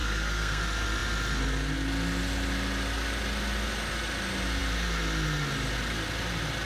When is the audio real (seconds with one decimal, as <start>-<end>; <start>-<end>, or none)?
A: 0.6-6.7